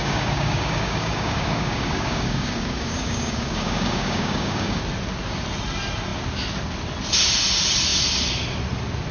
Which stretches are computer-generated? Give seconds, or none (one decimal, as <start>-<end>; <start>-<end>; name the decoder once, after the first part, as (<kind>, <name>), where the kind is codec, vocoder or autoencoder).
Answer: 0.0-4.8 (codec, DAC)